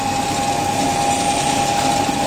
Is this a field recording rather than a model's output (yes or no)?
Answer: yes